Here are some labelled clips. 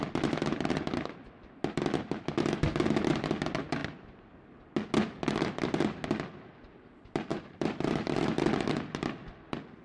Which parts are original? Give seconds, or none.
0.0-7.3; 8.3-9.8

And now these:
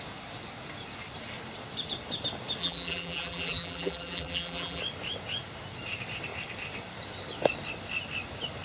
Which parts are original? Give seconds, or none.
0.0-2.6; 4.8-8.6

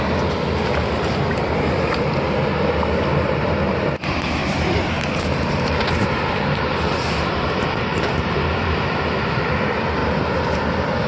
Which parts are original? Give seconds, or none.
0.0-4.4; 8.9-10.0; 10.6-11.1

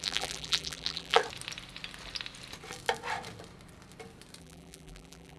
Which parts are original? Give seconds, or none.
1.2-4.4

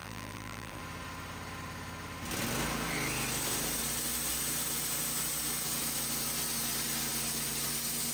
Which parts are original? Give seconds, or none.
0.8-8.1